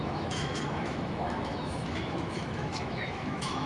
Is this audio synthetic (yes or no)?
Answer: yes